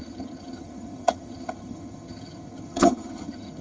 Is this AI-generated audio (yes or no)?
yes